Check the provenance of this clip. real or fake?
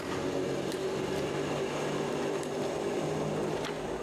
real